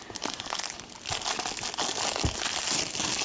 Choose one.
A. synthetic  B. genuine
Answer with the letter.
B